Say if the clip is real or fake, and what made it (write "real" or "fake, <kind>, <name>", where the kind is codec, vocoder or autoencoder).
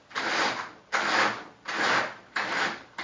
real